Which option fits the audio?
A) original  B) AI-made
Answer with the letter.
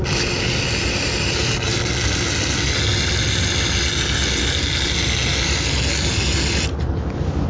A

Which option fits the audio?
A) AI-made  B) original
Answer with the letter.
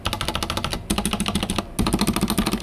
B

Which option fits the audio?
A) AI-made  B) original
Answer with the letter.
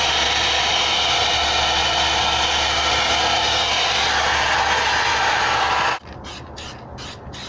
B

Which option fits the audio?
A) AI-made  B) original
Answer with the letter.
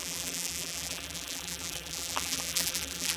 A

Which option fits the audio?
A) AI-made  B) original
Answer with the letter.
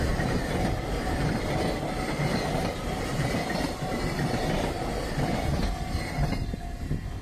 B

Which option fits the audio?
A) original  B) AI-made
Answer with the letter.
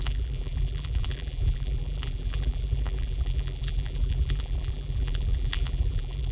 B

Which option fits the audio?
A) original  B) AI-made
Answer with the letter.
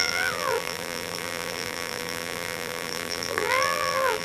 B